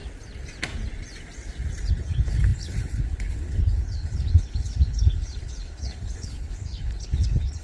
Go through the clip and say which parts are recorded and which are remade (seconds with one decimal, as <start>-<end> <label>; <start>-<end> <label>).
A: 0.0-1.9 recorded; 1.9-7.6 remade